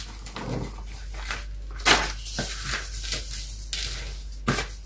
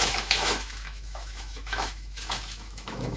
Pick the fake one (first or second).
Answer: second